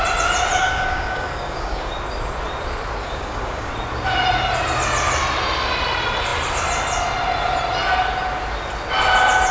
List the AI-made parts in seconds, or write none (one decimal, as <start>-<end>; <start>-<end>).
0.6-1.9; 3.0-3.7

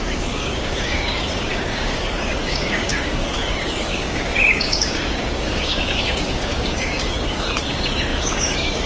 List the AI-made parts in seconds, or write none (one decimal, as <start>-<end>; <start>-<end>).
0.0-8.9

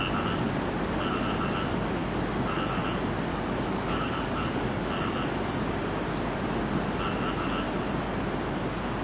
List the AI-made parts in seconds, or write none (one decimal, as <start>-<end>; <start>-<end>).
3.3-4.9

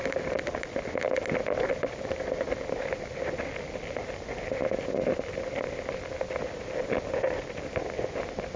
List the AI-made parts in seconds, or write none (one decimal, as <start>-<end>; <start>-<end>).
none

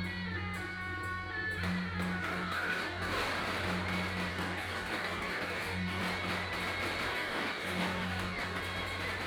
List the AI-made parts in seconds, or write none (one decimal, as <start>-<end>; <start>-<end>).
2.2-3.3; 4.3-6.0; 7.1-8.6

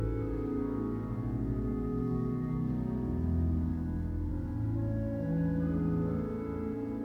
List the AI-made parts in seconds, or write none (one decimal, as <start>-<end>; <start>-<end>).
2.0-2.7; 3.7-4.3

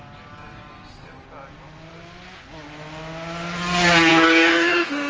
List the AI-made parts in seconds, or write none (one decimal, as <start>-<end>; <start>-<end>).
4.1-5.1